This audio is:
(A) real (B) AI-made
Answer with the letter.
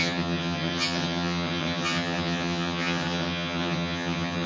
B